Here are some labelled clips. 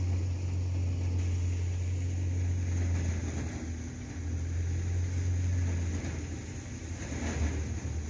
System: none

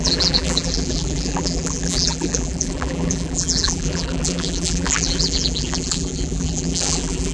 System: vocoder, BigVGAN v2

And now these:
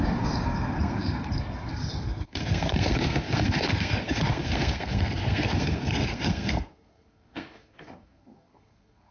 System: codec, SNAC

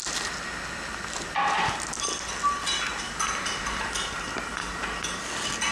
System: none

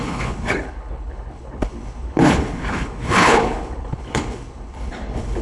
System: codec, HILCodec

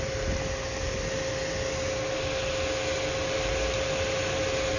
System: none